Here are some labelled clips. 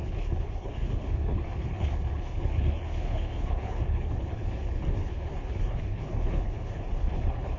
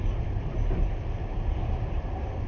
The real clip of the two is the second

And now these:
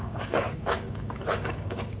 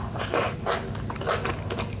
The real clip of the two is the second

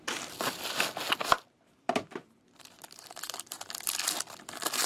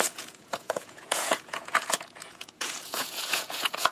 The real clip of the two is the first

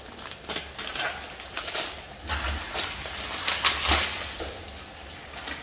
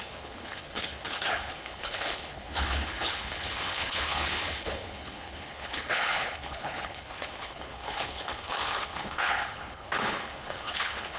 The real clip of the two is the first